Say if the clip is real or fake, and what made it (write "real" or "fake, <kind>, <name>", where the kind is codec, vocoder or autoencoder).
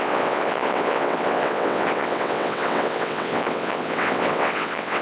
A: fake, vocoder, WaveNeXt